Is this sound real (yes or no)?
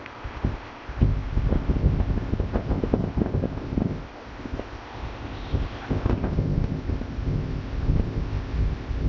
no